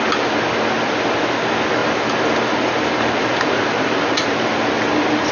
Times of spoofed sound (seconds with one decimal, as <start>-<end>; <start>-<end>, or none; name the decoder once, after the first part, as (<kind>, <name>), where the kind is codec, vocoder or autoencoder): none